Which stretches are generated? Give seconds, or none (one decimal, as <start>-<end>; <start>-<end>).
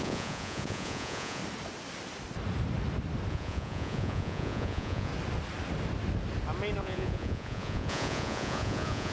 0.0-1.4; 3.3-5.1; 6.8-9.1